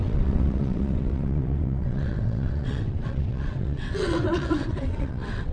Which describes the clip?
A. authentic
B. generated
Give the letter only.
B